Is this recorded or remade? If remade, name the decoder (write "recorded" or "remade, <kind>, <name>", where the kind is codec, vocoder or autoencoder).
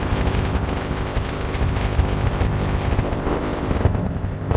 remade, codec, ZipCodec